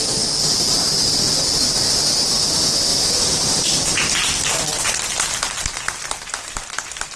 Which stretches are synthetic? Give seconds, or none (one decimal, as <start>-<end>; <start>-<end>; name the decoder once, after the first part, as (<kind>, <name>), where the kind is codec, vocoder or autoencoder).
2.9-3.8 (vocoder, BigVGAN v2)